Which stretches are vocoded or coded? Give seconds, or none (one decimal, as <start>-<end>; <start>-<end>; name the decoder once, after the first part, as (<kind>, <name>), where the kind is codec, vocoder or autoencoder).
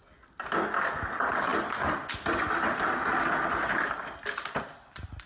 none